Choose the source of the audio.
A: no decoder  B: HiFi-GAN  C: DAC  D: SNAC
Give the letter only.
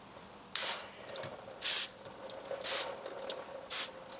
A